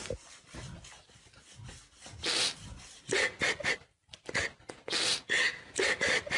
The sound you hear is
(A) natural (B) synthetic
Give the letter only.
A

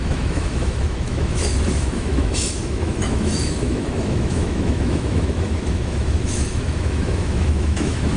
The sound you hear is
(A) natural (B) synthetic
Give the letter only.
B